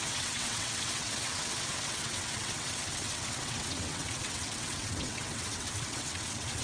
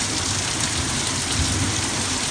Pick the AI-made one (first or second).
first